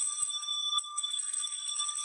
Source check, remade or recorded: remade